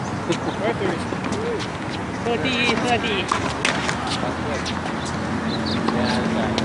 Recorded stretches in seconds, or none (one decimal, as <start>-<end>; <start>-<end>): 0.0-6.6